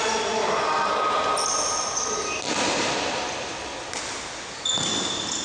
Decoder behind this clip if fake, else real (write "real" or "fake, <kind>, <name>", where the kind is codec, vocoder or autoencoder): real